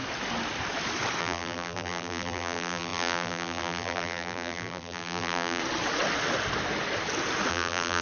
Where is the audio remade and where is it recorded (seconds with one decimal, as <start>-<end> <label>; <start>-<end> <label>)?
0.0-1.2 recorded; 1.2-5.6 remade; 5.6-7.5 recorded; 7.5-8.0 remade